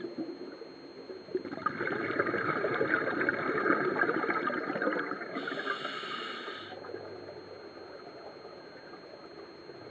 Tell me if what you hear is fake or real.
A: real